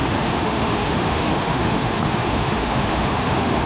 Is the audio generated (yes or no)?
yes